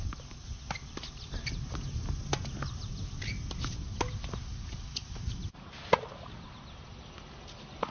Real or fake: real